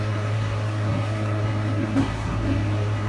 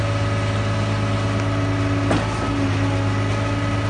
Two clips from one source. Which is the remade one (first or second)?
first